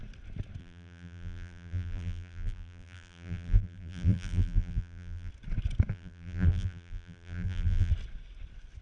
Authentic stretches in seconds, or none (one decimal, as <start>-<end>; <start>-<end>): 0.0-0.6; 5.3-5.9; 7.9-8.8